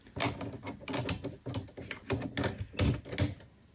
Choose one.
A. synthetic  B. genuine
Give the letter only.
B